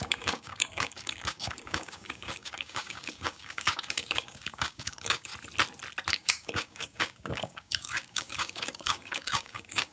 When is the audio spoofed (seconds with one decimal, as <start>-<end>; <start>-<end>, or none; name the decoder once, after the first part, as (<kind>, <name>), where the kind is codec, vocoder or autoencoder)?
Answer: 0.0-5.3 (codec, DAC); 6.1-9.9